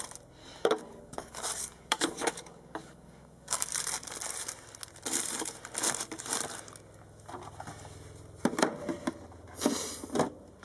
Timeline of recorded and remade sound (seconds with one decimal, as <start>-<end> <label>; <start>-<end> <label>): 0.0-0.4 recorded; 0.4-3.7 remade; 3.7-10.6 recorded